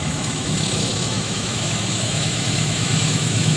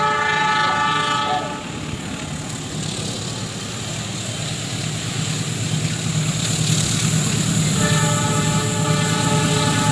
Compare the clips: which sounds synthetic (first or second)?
first